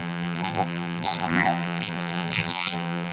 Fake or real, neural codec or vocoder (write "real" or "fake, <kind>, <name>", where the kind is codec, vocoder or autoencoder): fake, vocoder, BigVGAN v2